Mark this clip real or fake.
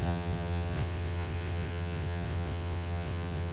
fake